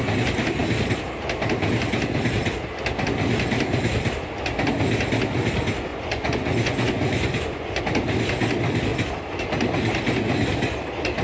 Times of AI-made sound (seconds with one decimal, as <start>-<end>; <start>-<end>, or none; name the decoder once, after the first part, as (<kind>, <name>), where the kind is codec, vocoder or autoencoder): 5.9-7.8 (vocoder, Vocos)